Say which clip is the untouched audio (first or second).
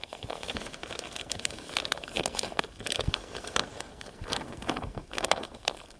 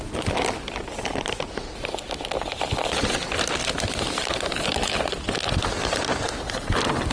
second